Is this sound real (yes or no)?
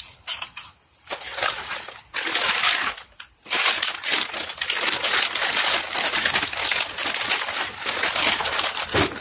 yes